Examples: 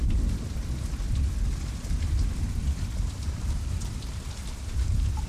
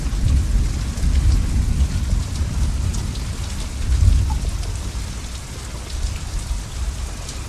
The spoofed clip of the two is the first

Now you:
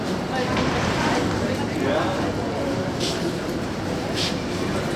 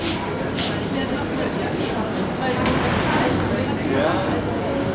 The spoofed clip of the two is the first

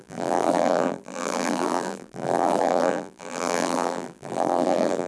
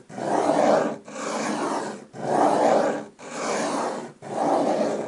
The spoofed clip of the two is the first